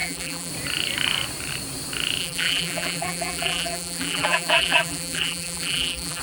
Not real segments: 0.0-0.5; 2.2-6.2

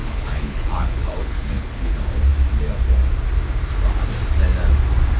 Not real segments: 0.0-1.9

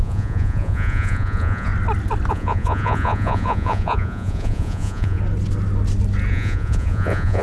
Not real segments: 0.0-1.7; 2.3-5.2; 6.3-7.4

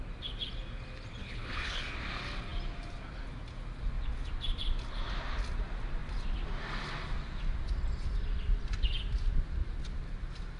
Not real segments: 1.2-1.8

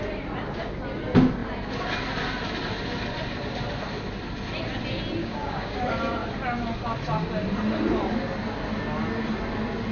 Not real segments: 5.2-5.8